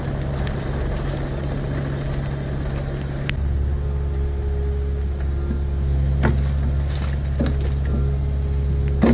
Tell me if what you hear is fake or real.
real